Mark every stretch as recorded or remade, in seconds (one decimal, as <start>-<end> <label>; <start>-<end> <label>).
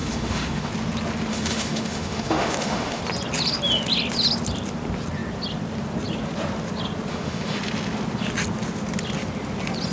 0.0-0.7 remade; 0.7-1.3 recorded; 1.3-3.0 remade; 3.0-7.1 recorded; 7.1-7.6 remade; 7.6-9.9 recorded